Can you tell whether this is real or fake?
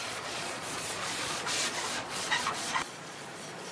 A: fake